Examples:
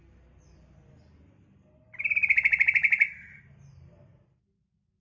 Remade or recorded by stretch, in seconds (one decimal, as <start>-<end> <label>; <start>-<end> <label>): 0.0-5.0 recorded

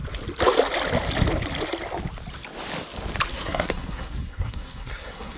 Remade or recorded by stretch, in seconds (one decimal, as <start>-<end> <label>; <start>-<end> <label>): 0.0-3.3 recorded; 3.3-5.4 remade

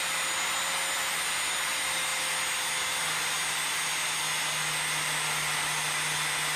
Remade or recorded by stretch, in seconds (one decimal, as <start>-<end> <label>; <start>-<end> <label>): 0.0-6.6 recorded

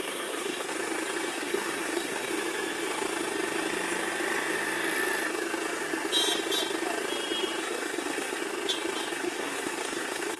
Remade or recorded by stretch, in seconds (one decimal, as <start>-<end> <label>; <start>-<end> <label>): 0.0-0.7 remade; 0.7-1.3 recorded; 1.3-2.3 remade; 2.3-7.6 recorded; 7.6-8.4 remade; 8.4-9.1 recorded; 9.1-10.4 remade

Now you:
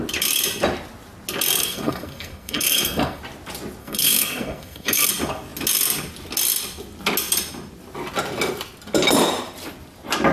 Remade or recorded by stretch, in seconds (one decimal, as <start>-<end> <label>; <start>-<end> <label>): 0.0-1.6 recorded; 1.6-3.2 remade; 3.2-3.8 recorded; 3.8-5.1 remade; 5.1-10.3 recorded

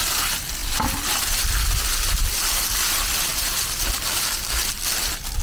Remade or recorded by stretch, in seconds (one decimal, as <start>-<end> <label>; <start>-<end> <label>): 0.0-5.4 recorded

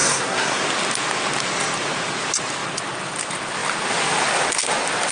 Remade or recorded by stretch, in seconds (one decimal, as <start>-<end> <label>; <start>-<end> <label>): 0.0-0.6 remade; 0.6-5.1 recorded

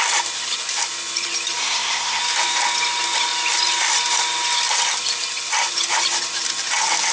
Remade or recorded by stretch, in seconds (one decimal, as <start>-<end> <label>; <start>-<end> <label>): 0.0-1.6 recorded; 1.6-2.2 remade; 2.2-7.1 recorded